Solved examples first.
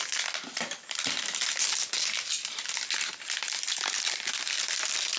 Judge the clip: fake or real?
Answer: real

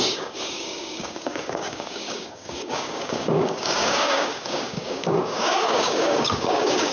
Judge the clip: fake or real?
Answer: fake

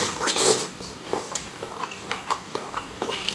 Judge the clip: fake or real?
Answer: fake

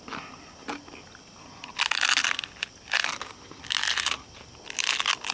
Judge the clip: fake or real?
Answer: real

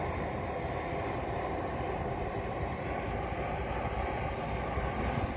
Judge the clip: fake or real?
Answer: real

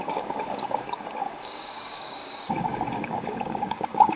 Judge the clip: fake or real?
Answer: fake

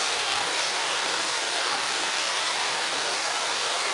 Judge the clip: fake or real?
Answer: fake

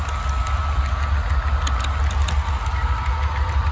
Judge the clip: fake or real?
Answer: real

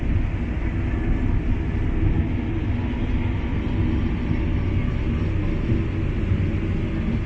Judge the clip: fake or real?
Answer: real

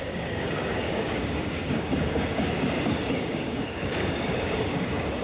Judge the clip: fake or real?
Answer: fake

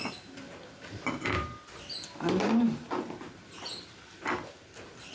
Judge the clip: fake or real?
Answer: real